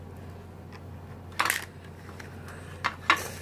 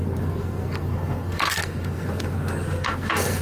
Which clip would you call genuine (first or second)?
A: first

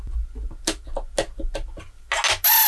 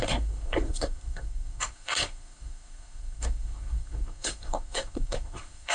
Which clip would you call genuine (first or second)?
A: first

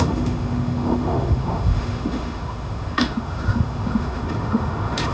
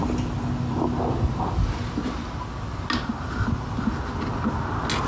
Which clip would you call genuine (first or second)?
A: second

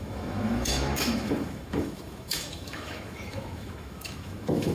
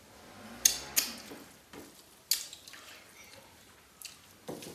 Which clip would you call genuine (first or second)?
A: second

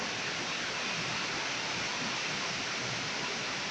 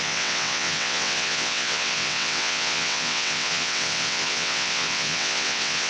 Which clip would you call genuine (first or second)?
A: first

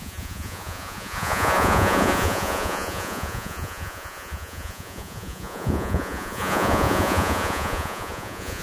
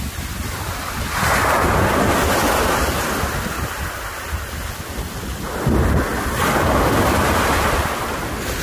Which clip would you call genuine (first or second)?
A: second